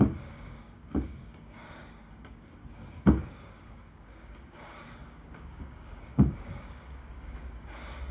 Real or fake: fake